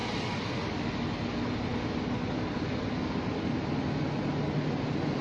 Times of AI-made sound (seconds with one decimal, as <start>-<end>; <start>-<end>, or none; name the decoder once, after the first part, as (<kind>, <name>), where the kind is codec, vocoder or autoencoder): none